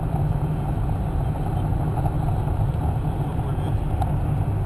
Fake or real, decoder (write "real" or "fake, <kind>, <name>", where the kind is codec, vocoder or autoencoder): real